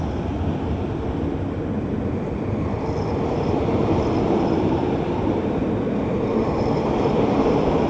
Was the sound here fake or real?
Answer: fake